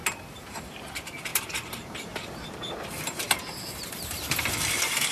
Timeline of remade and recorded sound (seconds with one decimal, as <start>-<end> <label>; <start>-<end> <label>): 0.0-0.6 remade; 0.6-1.3 recorded; 1.3-4.4 remade; 4.4-5.1 recorded